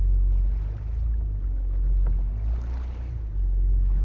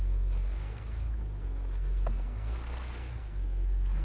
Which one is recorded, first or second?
first